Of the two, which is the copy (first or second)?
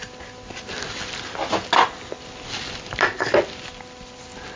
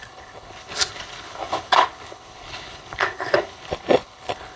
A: second